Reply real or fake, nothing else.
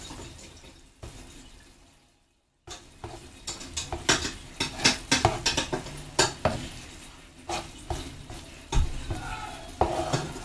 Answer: real